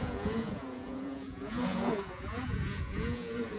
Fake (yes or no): yes